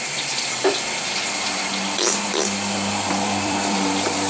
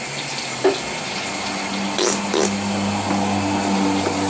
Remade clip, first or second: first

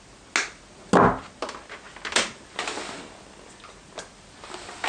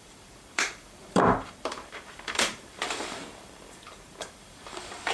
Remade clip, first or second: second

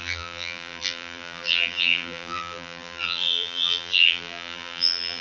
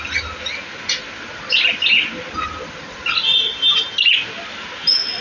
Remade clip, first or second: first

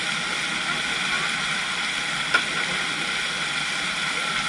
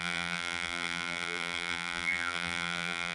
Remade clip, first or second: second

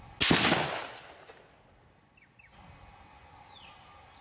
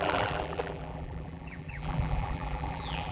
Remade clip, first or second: second